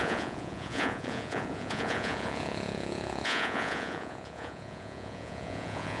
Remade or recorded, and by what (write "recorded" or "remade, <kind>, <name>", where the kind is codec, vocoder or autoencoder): remade, vocoder, Vocos